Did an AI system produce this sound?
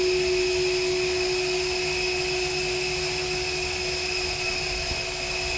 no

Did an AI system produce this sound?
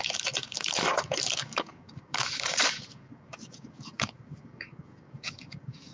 yes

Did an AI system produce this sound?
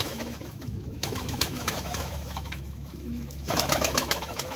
yes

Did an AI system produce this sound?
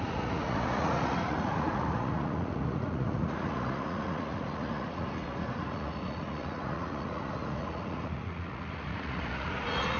yes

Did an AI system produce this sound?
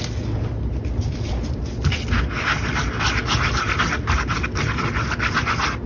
no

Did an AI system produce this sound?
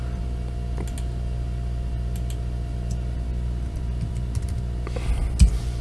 no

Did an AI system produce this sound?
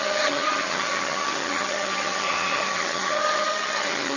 yes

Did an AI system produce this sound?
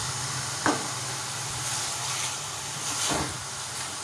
no